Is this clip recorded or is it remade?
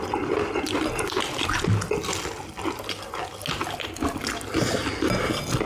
recorded